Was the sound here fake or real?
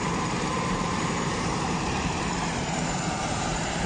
fake